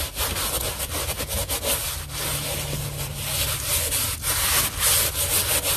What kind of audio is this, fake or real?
real